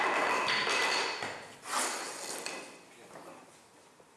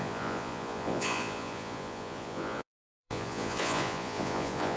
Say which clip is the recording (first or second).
first